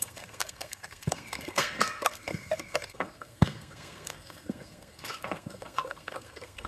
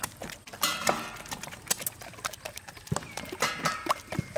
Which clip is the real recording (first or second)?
second